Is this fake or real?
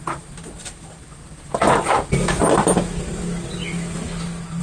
real